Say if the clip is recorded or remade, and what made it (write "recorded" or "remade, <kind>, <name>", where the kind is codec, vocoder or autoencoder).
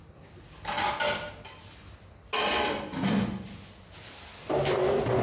recorded